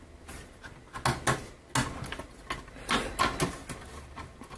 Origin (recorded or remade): recorded